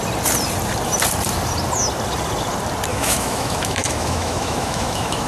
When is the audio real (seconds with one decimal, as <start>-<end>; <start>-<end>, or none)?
0.0-2.9